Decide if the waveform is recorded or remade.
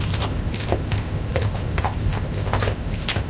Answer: remade